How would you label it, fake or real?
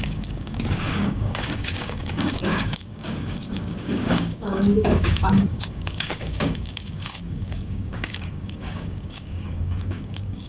fake